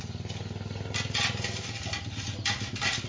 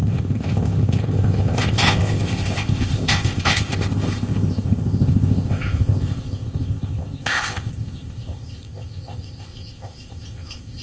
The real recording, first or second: first